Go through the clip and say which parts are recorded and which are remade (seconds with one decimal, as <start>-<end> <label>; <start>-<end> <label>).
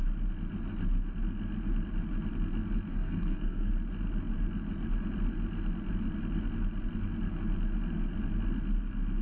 0.0-2.9 recorded; 2.9-3.7 remade; 3.7-9.2 recorded